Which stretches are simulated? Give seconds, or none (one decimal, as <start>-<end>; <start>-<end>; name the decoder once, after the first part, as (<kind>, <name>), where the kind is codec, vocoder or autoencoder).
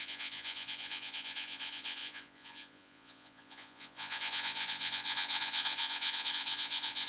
0.0-7.1 (vocoder, Vocos)